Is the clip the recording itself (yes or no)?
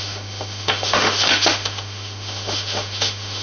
no